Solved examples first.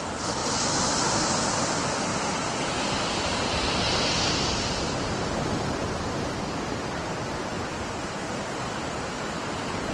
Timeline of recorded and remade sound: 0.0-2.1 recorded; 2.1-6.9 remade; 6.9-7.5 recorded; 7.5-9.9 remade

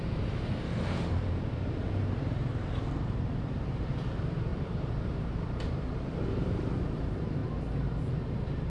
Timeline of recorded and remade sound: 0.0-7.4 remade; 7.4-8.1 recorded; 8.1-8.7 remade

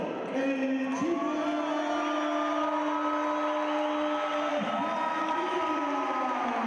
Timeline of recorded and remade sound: 0.0-5.2 recorded; 5.2-6.2 remade; 6.2-6.7 recorded

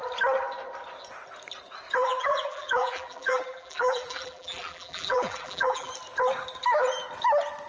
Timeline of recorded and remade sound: 0.0-2.0 recorded; 2.0-5.9 remade; 5.9-7.7 recorded

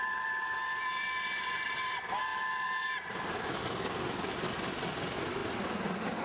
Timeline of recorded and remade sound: 0.0-6.2 recorded

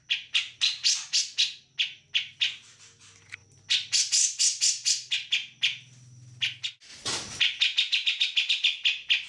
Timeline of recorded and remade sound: 0.0-9.3 recorded